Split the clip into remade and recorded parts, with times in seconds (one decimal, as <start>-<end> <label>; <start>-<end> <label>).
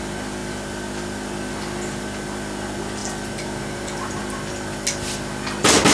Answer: 0.0-5.9 recorded